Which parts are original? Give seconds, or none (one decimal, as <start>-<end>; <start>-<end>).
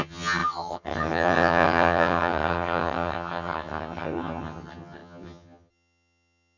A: none